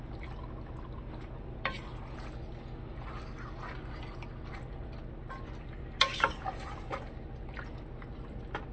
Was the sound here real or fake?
real